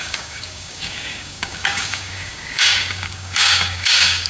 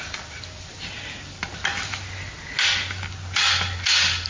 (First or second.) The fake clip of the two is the first